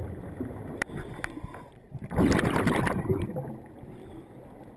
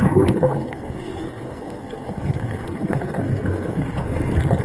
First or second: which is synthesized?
second